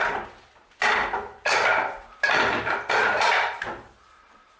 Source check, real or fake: fake